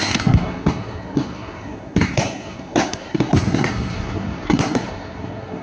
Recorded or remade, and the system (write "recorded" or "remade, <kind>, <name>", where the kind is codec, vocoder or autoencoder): remade, codec, SNAC